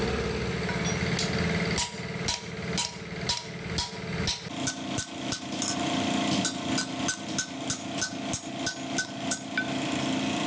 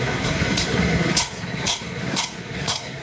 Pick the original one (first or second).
first